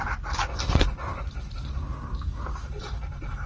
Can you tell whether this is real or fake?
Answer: fake